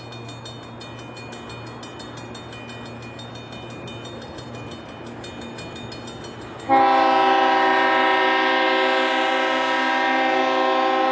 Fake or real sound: real